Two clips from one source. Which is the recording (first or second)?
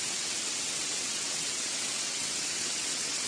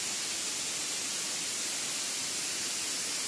second